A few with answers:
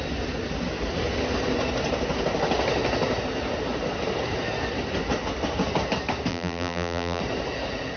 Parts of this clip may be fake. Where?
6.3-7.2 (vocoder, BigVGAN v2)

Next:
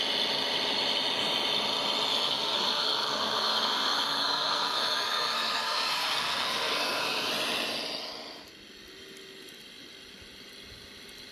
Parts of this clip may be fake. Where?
2.1-7.3 (codec, SNAC)

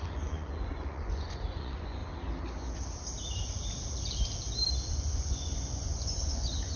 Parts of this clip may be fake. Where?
0.0-2.0 (vocoder, Vocos); 4.9-6.8

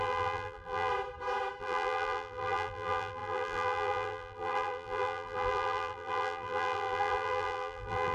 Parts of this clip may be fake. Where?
0.0-0.9 (vocoder, BigVGAN v2); 1.6-8.1

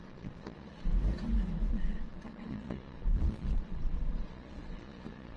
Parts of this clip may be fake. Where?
0.0-0.9 (vocoder, Vocos); 1.7-5.4